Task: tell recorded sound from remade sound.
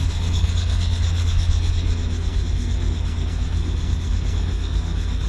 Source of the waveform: remade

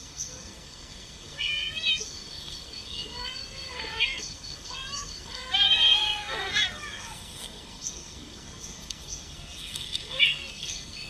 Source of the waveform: remade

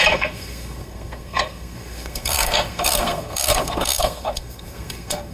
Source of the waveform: remade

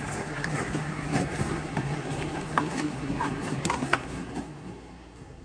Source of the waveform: remade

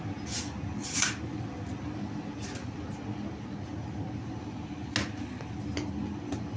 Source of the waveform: recorded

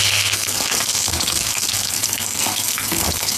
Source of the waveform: remade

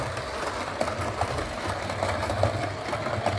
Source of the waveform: recorded